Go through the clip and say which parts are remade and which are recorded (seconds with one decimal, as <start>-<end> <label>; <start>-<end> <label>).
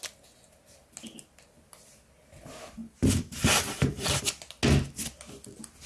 0.0-2.8 recorded; 2.8-4.2 remade; 4.2-5.9 recorded